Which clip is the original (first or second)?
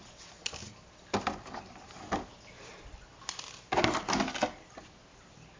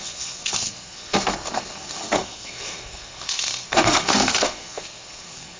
first